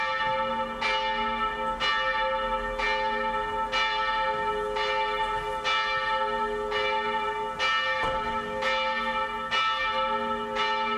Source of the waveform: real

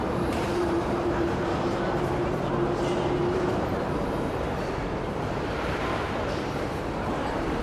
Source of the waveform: fake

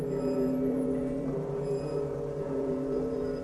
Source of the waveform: fake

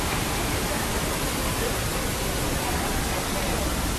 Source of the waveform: real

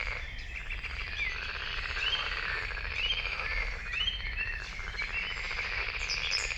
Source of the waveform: fake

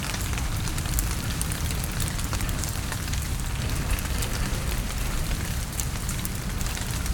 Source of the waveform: fake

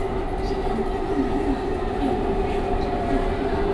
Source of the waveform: real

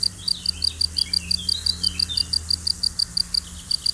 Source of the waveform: real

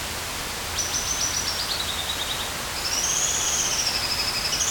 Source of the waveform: real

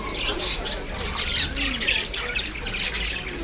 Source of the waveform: real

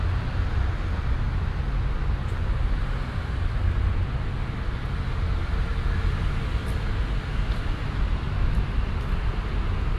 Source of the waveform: real